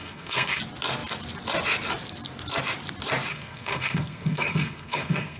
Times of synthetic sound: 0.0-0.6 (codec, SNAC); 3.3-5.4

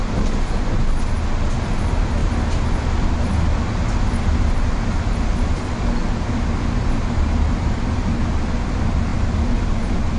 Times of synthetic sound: none

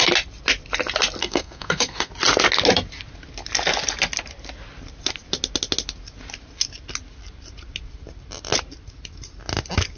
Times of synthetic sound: 1.2-2.1 (codec, SNAC)